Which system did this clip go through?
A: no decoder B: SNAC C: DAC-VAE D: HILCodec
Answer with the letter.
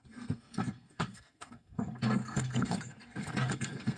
B